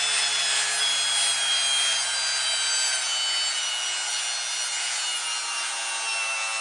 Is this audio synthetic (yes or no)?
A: no